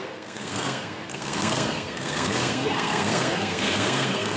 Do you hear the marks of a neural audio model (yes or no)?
yes